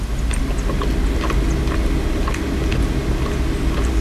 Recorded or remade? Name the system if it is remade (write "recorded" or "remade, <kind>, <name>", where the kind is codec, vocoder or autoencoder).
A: recorded